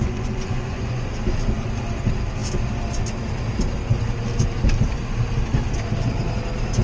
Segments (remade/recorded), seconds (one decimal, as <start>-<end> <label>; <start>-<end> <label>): 0.0-1.1 remade; 1.1-6.8 recorded